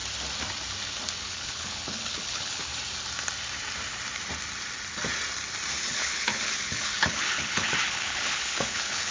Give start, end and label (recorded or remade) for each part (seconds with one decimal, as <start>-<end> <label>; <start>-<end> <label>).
0.0-1.2 recorded; 1.2-2.7 remade; 2.7-5.7 recorded; 5.7-9.1 remade